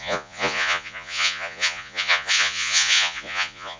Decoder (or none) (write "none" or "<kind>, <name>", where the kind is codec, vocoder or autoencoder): vocoder, Vocos